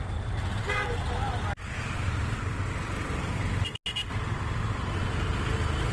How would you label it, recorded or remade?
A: recorded